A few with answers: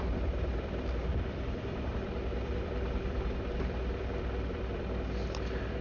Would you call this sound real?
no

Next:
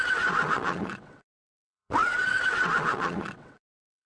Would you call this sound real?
no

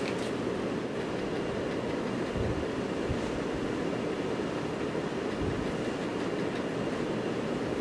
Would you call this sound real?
yes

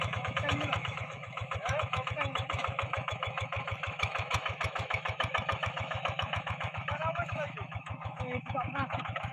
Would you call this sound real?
no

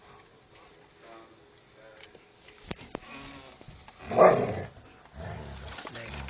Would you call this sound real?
yes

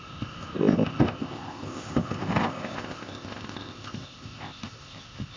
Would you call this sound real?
no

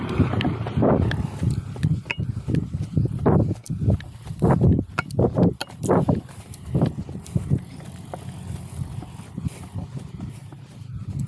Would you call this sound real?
yes